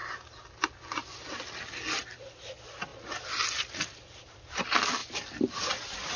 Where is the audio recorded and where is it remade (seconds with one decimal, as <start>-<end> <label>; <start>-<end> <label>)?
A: 0.0-6.2 recorded